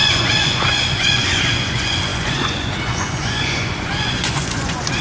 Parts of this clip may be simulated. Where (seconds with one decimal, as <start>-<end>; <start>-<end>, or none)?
0.0-5.0